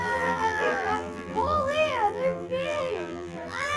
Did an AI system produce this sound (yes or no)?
yes